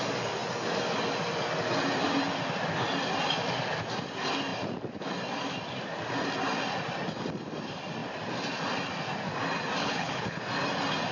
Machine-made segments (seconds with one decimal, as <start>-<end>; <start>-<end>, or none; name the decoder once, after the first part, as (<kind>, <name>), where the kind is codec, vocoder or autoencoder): 9.8-10.4 (codec, HILCodec)